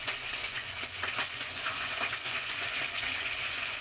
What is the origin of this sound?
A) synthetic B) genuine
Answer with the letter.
A